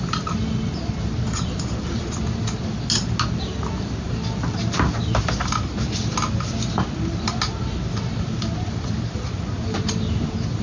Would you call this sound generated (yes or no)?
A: no